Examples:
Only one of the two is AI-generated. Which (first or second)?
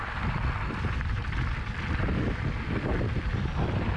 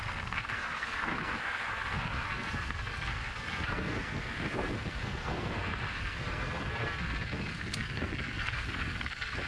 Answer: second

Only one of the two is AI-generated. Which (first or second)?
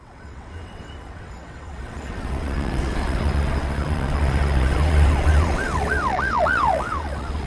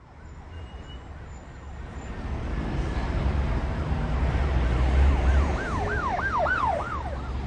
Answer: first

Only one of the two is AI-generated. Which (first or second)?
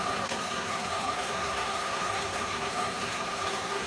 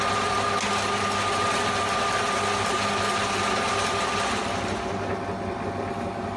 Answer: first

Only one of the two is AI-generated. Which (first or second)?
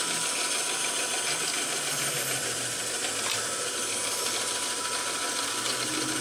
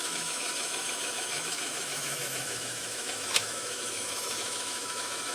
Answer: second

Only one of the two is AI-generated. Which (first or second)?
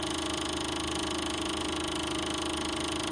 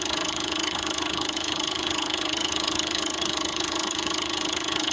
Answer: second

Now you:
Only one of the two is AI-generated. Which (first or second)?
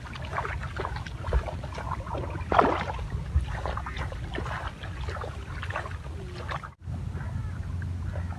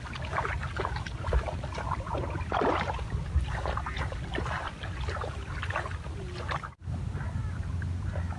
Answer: second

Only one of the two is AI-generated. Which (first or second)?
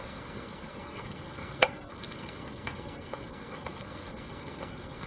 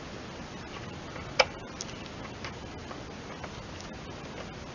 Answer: first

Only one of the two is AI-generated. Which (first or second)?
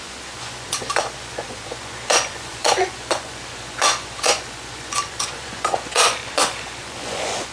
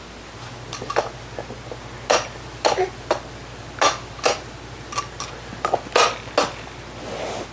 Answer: first